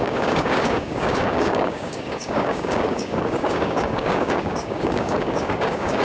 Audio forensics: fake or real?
fake